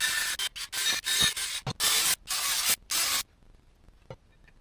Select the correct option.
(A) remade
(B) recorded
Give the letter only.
B